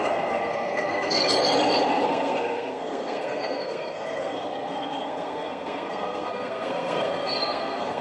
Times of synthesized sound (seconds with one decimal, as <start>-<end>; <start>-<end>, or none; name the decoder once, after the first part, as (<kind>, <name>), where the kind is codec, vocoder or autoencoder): 0.0-1.2 (codec, SNAC); 1.9-8.0